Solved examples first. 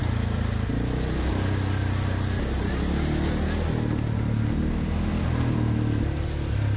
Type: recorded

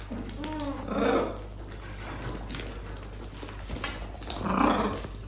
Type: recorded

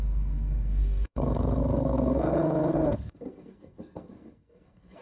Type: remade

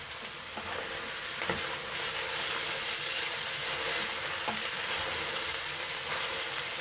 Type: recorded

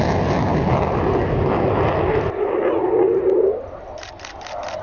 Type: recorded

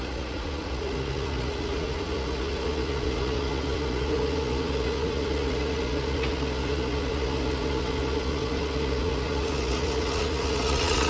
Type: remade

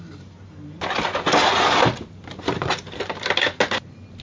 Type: recorded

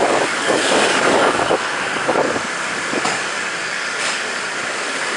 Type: remade